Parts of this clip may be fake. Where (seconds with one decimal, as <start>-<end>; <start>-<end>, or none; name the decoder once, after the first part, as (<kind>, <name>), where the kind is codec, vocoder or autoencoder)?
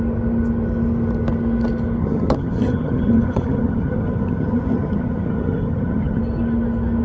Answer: 2.0-6.2 (vocoder, HiFi-GAN)